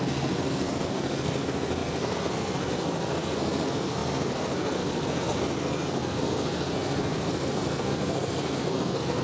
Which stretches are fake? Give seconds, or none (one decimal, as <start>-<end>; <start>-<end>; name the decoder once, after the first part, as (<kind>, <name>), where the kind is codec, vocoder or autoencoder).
0.0-9.2 (codec, SNAC)